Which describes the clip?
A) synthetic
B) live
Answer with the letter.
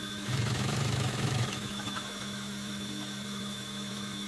A